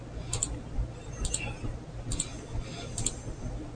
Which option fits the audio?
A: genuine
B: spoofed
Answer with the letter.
A